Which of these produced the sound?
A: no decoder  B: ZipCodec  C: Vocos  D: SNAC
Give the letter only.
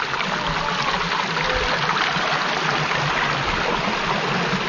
A